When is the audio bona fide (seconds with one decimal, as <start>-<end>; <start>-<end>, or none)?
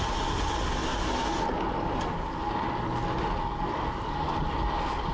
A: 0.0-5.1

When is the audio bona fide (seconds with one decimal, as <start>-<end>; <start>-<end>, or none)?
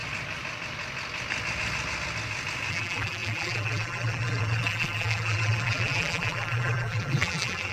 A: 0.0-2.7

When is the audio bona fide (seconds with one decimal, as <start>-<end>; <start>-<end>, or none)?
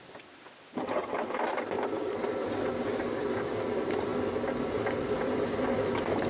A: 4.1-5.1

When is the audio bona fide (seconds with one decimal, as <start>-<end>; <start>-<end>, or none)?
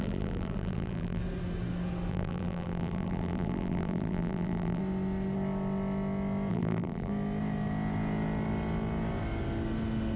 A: 1.2-2.1; 4.8-6.5; 7.1-10.2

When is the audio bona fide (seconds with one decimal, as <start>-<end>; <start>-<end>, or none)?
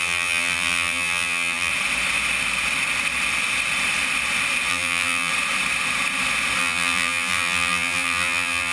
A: 1.7-4.7; 5.3-6.6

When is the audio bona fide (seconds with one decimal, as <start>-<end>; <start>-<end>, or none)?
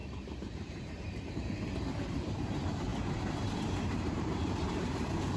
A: none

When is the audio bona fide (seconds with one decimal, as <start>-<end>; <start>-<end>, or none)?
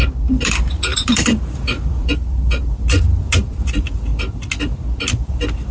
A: 4.1-4.9